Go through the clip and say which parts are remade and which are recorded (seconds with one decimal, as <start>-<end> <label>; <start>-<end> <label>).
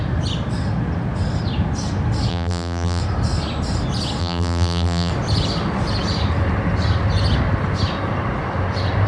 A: 0.0-2.3 recorded; 2.3-3.0 remade; 3.0-4.2 recorded; 4.2-5.1 remade; 5.1-9.1 recorded